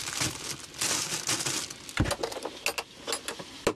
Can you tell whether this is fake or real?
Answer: real